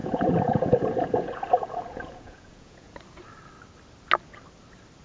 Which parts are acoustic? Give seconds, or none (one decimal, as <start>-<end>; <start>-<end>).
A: 3.0-5.0